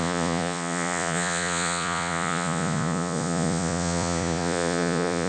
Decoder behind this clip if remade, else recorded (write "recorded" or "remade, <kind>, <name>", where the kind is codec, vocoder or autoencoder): remade, vocoder, Vocos